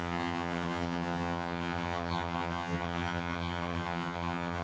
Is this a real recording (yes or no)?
no